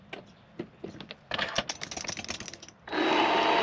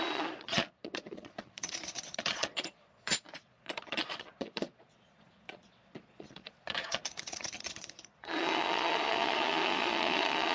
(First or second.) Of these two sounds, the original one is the first